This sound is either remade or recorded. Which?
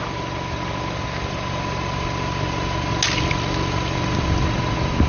recorded